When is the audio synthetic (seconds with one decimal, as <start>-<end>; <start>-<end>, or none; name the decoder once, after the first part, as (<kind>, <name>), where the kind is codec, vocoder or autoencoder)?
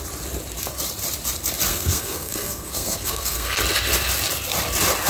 1.7-3.6 (codec, SNAC)